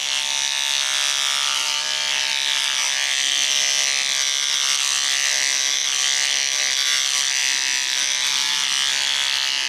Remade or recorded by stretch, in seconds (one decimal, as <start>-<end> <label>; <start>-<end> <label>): 0.0-9.7 recorded